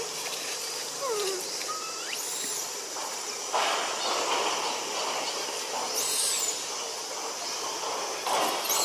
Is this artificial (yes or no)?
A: no